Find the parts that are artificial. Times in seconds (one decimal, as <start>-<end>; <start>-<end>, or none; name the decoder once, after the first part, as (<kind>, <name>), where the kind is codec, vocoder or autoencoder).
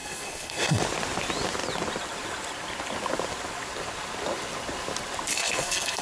0.0-0.8 (codec, SNAC); 5.3-6.0